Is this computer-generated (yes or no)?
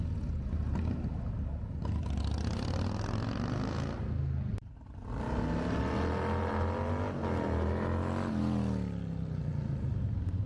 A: no